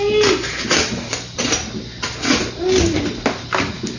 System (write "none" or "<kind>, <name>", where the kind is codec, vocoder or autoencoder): none